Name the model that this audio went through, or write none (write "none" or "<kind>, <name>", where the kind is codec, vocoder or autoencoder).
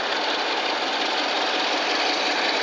none